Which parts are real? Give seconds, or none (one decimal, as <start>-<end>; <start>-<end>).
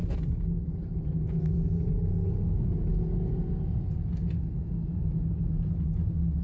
0.0-6.4